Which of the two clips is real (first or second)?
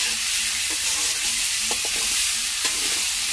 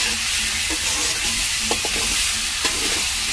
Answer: second